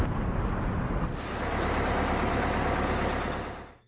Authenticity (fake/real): real